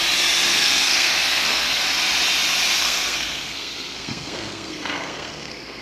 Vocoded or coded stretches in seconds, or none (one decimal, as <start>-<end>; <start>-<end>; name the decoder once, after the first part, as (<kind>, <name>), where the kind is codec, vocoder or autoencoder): 0.5-1.8 (codec, SNAC); 2.8-5.8